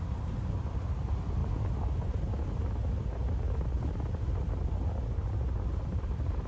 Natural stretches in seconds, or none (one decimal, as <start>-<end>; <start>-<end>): 0.0-6.5